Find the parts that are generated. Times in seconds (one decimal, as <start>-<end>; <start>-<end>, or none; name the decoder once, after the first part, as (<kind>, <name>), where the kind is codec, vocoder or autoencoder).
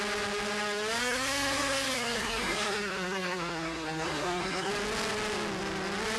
1.0-4.7 (codec, SNAC)